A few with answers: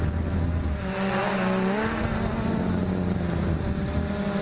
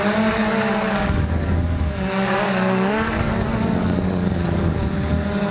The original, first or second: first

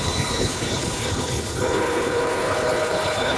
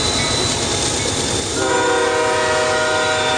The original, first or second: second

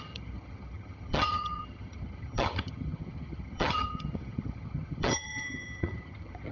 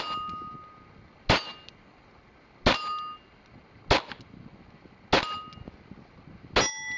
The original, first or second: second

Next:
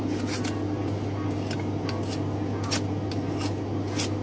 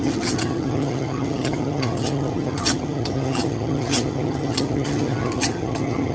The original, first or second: first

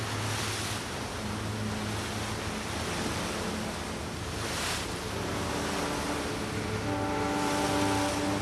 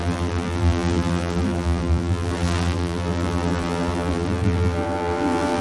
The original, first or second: first